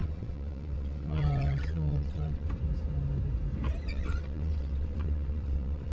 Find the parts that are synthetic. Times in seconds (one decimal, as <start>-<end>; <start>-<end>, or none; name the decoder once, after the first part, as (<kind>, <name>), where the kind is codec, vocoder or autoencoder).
0.0-2.5 (vocoder, WaveNeXt); 3.9-5.9